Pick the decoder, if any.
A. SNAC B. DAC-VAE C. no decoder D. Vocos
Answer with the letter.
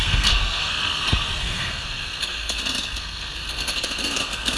A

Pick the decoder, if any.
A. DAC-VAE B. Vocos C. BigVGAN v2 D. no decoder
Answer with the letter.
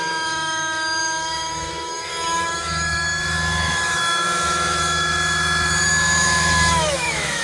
A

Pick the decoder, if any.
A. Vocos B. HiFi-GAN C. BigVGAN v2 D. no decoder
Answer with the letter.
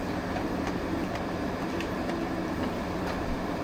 C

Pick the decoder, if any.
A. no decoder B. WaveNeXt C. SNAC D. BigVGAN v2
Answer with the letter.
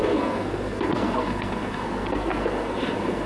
C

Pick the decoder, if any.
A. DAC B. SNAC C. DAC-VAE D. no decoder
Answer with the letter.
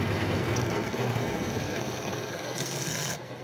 B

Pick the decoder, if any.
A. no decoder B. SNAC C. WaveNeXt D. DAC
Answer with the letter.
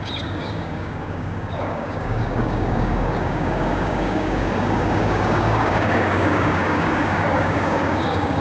D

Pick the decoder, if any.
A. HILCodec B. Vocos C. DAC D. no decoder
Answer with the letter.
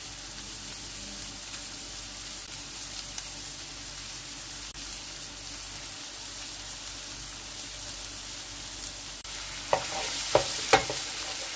D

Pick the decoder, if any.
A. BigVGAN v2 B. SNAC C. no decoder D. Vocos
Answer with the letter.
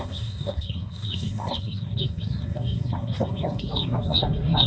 B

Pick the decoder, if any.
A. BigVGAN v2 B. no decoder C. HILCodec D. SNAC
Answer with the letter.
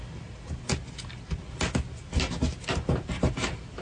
B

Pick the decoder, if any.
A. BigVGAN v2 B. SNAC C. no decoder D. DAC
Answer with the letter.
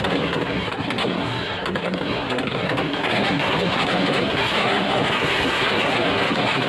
B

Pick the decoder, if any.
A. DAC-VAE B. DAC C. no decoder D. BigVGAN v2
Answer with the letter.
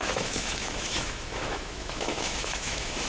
A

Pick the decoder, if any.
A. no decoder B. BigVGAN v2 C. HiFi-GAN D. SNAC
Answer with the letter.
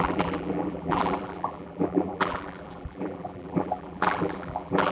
B